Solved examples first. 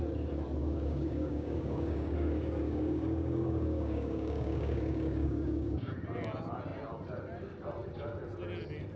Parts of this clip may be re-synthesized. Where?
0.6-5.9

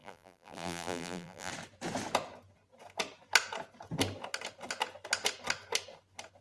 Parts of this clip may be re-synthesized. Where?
0.0-1.5

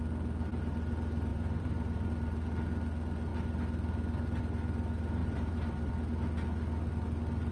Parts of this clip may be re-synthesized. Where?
1.3-2.1; 5.2-5.9

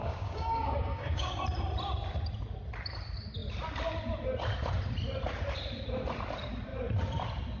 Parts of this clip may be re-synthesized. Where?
0.0-1.3